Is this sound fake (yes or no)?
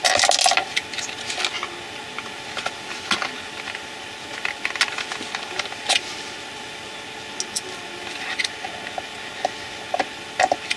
no